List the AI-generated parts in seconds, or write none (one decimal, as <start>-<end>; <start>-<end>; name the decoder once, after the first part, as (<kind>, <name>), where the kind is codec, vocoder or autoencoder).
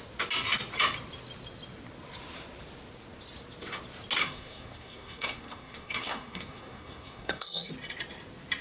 4.2-7.7 (codec, SNAC)